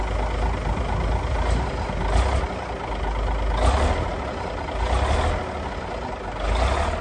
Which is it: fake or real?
real